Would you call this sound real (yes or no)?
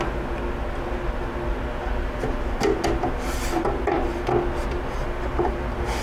yes